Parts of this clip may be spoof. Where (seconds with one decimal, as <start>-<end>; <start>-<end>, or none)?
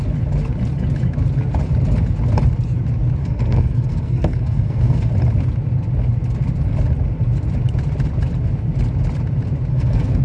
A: 3.2-5.1; 9.7-10.2